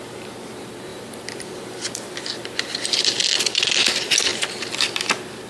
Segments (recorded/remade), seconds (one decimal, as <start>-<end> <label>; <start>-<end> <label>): 0.0-0.9 recorded; 0.9-3.8 remade; 3.8-5.5 recorded